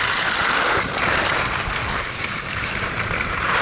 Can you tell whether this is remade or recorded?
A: remade